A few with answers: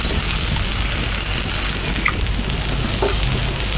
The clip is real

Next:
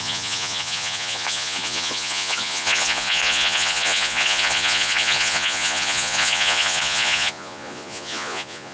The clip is fake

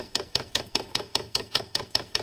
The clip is fake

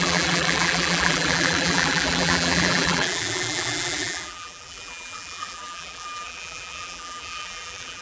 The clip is fake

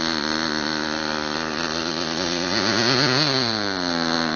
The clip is real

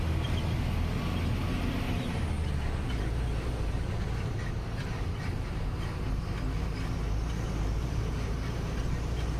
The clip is real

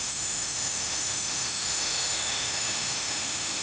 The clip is fake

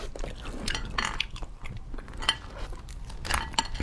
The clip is real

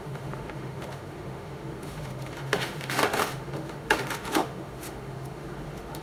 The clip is fake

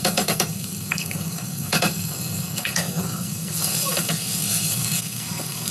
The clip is fake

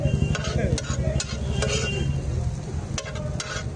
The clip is real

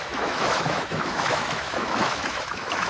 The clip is fake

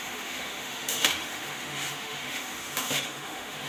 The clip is fake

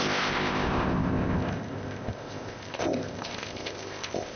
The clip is fake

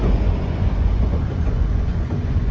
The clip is fake